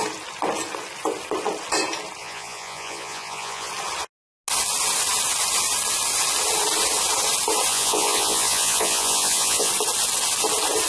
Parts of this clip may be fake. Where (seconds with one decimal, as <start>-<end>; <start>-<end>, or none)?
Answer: 2.2-3.7; 7.7-9.7